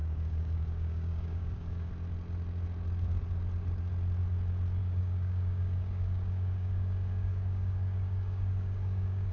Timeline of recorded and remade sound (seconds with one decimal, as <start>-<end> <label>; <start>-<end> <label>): 0.0-1.9 remade; 1.9-4.8 recorded; 4.8-9.3 remade